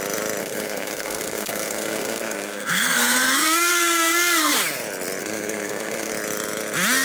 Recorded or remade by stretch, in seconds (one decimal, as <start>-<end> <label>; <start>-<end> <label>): 0.0-0.4 recorded; 0.4-4.5 remade; 4.5-5.2 recorded; 5.2-6.1 remade; 6.1-7.0 recorded